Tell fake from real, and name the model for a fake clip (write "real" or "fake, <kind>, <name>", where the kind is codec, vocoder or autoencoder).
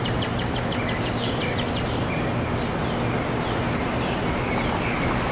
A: real